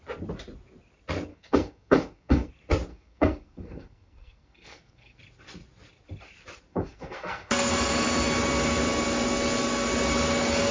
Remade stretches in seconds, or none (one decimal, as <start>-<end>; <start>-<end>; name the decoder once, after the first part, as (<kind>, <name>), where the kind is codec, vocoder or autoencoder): 1.3-2.5 (codec, SNAC); 2.9-5.2; 6.7-7.7